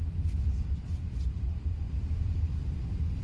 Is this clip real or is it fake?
real